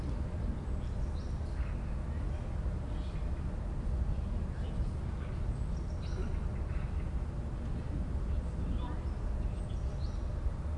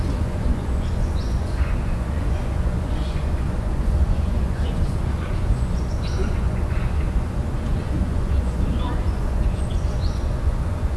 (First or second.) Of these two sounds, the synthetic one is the second